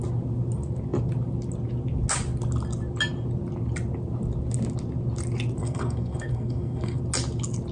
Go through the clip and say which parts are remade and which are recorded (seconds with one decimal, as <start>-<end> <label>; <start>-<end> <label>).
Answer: 0.0-5.6 recorded; 5.6-7.0 remade; 7.0-7.7 recorded